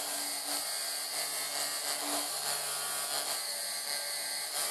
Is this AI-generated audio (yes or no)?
no